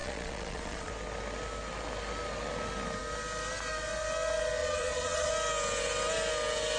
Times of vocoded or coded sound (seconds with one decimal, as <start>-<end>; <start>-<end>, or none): 0.0-0.9; 4.6-5.3